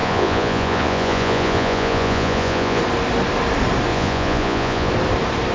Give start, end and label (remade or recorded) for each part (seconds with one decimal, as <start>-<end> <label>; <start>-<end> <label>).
0.0-2.8 remade; 2.8-3.9 recorded; 3.9-4.9 remade; 4.9-5.5 recorded